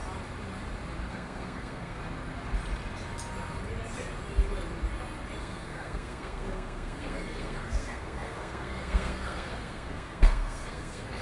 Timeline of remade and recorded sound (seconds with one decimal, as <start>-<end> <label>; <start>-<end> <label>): 0.0-1.1 recorded; 1.1-2.0 remade; 2.0-5.4 recorded; 5.4-11.2 remade